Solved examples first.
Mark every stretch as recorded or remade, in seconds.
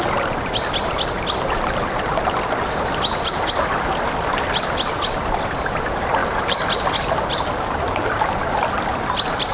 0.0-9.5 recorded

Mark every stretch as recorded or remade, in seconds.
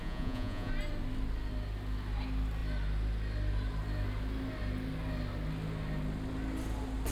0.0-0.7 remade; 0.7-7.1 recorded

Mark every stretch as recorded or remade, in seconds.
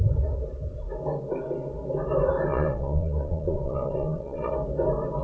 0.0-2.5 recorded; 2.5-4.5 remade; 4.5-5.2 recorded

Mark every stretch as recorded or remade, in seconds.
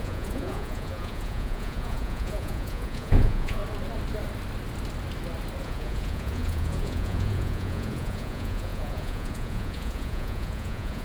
0.0-3.6 remade; 3.6-5.6 recorded; 5.6-11.0 remade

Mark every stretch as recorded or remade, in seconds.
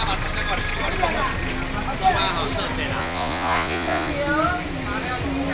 0.0-3.0 recorded; 3.0-4.1 remade; 4.1-5.5 recorded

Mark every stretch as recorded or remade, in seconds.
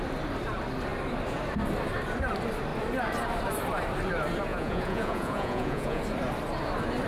0.0-4.5 recorded; 4.5-6.0 remade; 6.0-7.1 recorded